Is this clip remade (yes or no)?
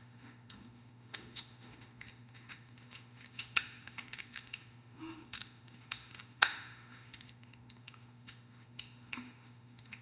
yes